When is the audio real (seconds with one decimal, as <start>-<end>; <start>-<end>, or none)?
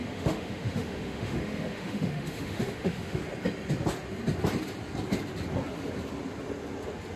3.2-7.2